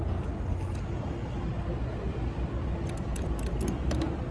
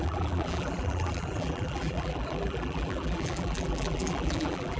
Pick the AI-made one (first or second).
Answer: second